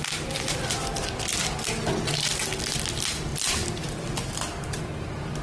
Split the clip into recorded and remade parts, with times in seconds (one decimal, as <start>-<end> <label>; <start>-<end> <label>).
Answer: 0.0-5.4 recorded